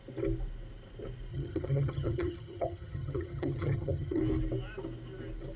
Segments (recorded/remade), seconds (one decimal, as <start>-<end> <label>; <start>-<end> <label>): 0.0-1.3 recorded; 1.3-4.2 remade; 4.2-5.6 recorded